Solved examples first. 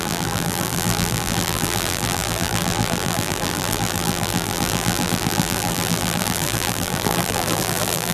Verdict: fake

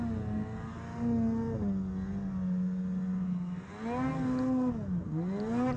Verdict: real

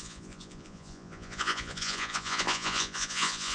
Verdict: fake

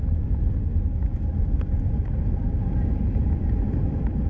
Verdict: real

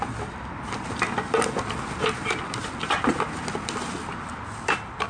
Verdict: real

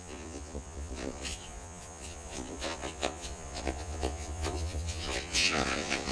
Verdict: fake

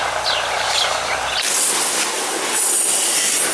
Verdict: real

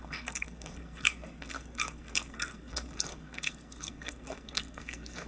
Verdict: fake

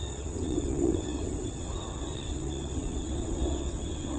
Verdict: fake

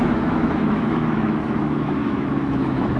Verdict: fake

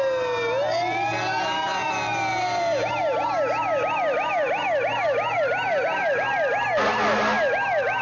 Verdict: real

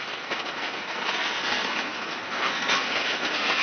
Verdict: fake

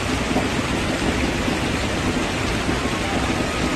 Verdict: real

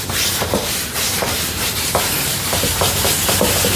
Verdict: fake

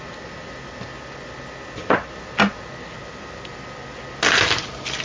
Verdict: real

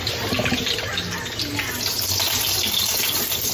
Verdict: real